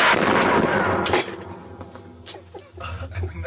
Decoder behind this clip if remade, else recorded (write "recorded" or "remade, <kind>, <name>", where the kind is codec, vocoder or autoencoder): recorded